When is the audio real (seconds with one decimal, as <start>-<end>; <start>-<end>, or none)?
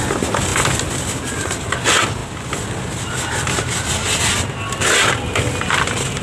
0.0-6.2